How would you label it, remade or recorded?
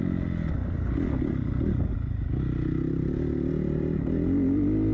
recorded